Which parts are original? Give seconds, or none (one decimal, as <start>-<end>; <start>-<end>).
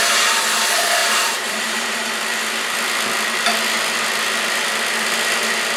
0.0-1.0; 2.1-5.8